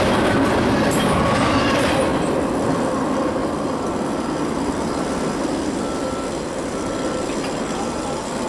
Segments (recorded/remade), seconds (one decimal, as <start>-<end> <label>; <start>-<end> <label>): 0.0-8.5 recorded